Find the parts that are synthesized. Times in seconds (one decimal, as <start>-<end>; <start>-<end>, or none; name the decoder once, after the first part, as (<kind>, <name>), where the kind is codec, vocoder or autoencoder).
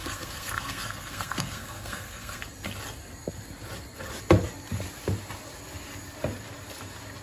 0.0-2.4 (codec, SNAC)